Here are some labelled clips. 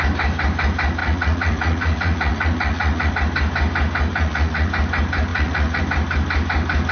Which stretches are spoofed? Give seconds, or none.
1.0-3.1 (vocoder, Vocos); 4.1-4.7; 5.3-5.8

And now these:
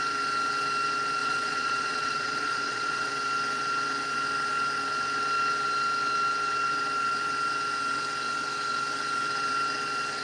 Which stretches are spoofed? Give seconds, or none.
1.2-3.1 (vocoder, Vocos)

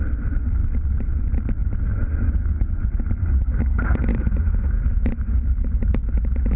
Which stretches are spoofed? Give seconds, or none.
1.9-2.8 (vocoder, Vocos); 4.1-5.3